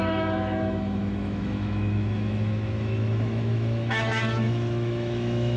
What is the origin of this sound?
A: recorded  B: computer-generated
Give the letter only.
B